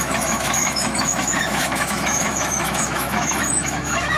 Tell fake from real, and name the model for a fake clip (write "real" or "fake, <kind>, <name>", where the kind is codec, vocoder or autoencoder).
fake, autoencoder, DAC-VAE